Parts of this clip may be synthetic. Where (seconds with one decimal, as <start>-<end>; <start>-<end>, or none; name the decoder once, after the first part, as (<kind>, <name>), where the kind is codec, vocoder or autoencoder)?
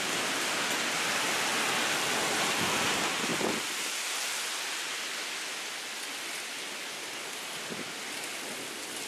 none